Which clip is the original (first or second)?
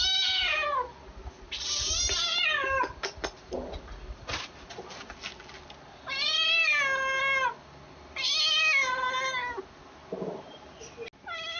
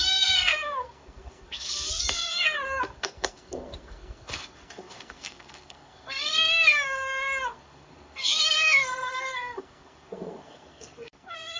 first